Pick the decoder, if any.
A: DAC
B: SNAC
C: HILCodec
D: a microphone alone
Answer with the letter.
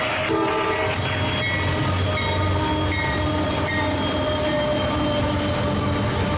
D